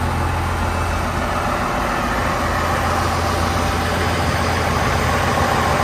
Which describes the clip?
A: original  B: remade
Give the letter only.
A